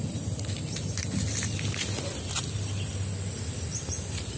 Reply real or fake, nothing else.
real